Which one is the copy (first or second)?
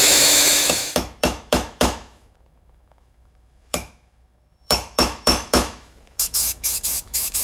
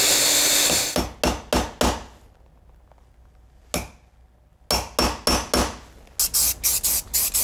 first